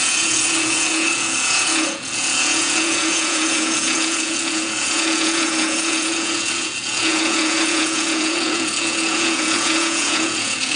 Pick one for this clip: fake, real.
fake